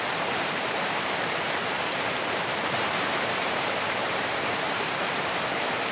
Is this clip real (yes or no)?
no